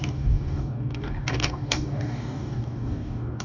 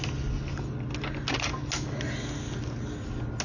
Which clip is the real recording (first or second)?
second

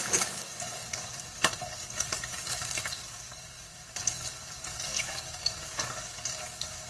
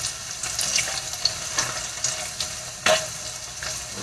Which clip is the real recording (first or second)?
second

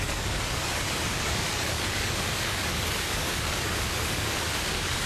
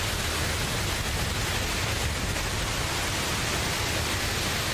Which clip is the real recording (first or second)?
second